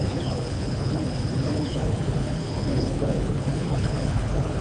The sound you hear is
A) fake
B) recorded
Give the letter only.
A